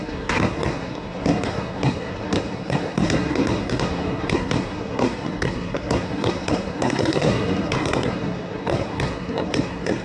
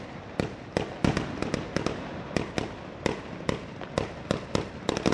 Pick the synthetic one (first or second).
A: first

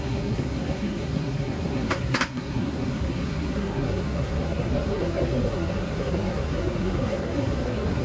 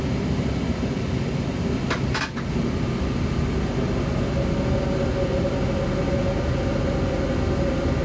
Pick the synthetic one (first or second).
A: first